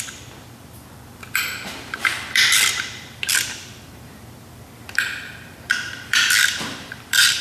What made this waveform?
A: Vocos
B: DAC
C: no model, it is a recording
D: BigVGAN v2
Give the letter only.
D